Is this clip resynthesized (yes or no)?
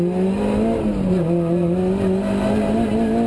no